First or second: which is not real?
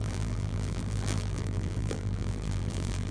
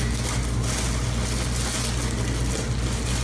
first